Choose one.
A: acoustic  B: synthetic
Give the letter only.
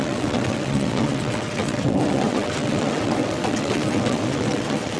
B